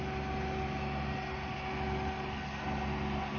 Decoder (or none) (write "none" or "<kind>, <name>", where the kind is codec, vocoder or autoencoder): none